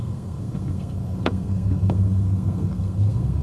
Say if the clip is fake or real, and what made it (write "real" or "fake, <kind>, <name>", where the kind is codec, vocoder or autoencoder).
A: fake, codec, SNAC